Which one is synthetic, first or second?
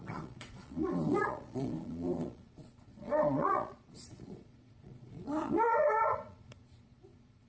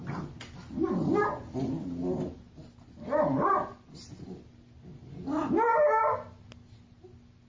first